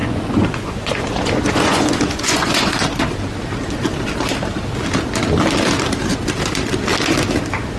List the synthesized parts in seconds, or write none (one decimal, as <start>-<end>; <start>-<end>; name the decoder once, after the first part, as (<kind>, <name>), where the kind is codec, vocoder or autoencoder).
0.0-2.7 (vocoder, Vocos)

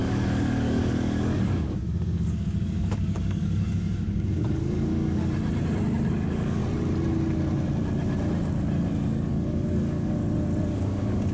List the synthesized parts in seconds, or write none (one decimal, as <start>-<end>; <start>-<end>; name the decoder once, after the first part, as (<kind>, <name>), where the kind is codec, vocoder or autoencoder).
0.0-5.2 (codec, DAC); 6.1-6.6; 9.3-10.2; 10.7-11.3

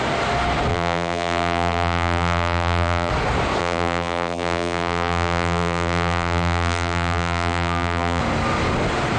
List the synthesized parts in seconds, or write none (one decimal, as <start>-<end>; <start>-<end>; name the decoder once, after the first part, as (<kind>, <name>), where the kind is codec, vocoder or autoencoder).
0.7-3.1 (vocoder, BigVGAN v2); 3.6-8.2

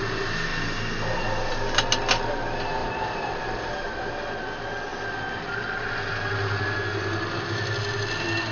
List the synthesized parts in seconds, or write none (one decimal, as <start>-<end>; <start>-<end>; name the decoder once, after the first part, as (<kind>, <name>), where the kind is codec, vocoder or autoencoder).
2.8-4.1 (vocoder, BigVGAN v2)

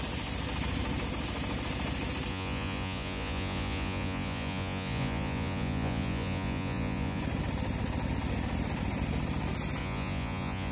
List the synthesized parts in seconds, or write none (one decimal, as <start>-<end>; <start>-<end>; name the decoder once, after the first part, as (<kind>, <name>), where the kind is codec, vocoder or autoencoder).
2.3-7.2 (vocoder, Vocos); 9.8-10.7